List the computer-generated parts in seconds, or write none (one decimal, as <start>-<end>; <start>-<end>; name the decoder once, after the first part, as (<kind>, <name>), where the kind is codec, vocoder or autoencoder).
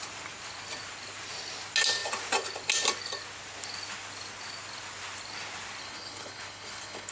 5.8-7.1 (codec, HILCodec)